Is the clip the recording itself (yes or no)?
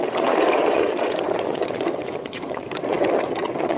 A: no